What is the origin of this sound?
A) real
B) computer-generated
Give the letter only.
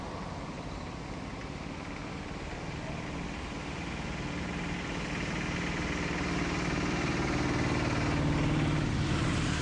A